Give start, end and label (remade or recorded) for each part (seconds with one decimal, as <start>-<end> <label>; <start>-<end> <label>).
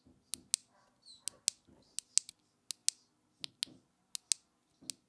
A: 0.0-5.1 recorded